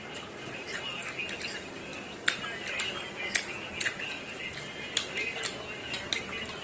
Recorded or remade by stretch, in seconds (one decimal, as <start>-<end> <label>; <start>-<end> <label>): 0.0-6.6 recorded